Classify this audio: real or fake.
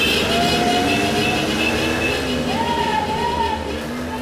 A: real